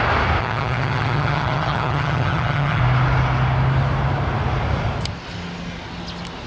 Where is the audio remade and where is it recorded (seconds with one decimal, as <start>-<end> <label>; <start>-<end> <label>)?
0.0-0.4 recorded; 0.4-2.8 remade; 2.8-6.5 recorded